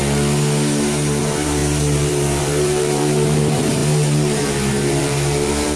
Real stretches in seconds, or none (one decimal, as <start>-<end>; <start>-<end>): 0.0-1.2